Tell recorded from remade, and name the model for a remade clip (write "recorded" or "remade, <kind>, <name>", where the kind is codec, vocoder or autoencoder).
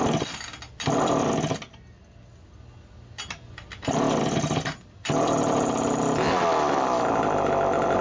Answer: recorded